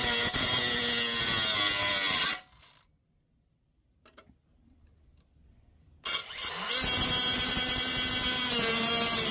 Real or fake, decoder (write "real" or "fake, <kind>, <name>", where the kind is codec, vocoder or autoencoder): real